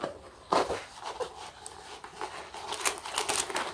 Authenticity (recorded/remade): recorded